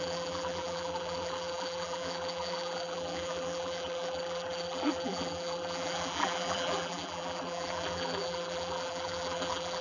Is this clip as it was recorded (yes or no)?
no